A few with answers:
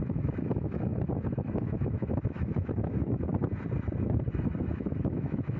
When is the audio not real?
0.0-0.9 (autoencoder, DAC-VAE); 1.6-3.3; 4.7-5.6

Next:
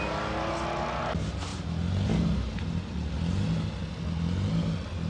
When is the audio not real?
none

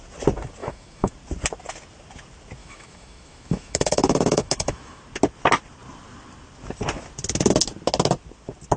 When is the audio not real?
0.6-1.1 (autoencoder, DAC-VAE); 2.6-5.0

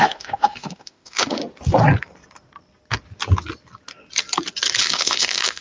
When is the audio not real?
0.0-1.4 (autoencoder, DAC-VAE); 4.8-5.6